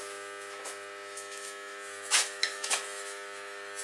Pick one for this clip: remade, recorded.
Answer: remade